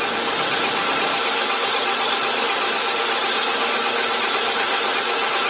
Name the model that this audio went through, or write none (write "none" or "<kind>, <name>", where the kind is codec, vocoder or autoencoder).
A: none